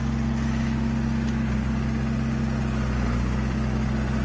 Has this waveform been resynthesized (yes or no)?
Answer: no